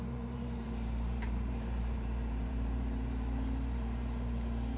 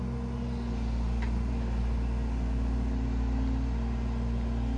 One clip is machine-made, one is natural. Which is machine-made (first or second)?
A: first